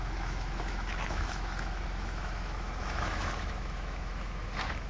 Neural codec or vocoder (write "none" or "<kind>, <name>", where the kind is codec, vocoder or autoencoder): autoencoder, DAC-VAE